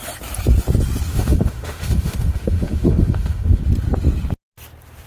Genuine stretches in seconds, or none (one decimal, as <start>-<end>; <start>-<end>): 0.0-1.1; 3.6-5.1